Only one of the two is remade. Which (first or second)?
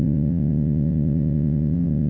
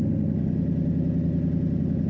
first